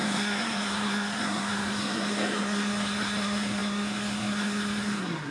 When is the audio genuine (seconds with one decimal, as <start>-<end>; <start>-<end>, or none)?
none